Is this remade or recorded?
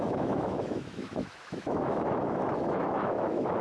remade